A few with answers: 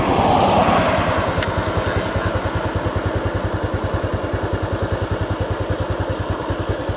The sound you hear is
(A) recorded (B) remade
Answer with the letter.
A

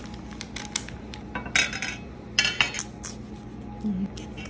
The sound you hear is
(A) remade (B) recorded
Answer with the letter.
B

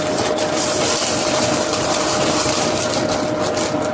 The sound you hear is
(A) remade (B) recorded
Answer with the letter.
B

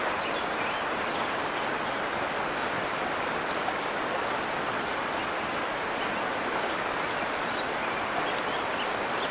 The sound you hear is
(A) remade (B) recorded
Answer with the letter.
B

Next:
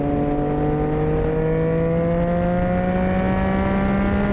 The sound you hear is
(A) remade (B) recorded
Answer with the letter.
B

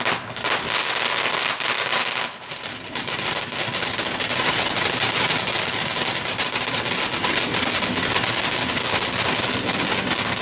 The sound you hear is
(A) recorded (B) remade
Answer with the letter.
A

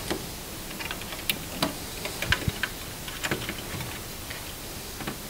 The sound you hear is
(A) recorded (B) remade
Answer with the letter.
A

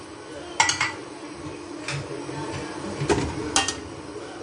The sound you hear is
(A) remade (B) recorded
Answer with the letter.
B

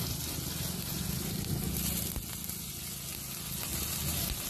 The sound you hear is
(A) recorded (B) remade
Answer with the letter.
A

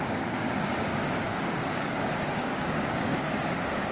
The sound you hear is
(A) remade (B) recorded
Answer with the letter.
A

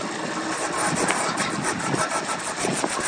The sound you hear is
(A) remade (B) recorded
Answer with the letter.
B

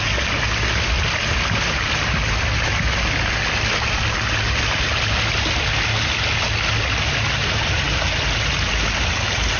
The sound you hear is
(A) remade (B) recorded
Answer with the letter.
B